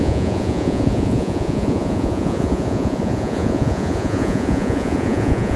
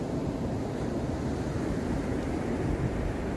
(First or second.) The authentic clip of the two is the second